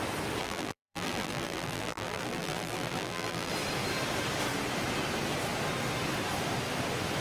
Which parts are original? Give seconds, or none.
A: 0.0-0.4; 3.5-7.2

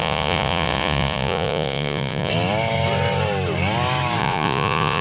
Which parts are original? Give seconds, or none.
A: 2.3-4.2

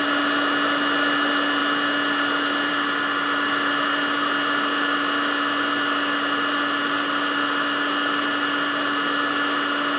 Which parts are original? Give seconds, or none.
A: 0.0-10.0

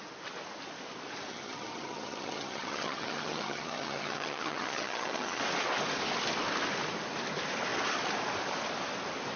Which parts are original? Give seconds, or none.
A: 0.0-1.3; 5.4-9.4

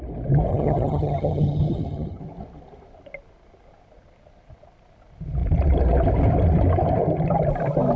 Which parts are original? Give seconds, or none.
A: 0.0-0.5; 2.2-8.0

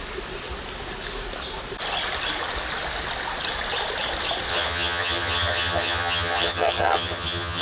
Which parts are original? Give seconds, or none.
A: 0.0-4.5

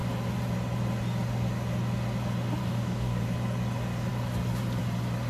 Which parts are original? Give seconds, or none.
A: 0.0-2.6; 3.2-5.3